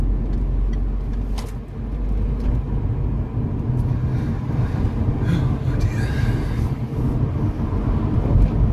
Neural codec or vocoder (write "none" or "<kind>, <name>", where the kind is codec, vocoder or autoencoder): none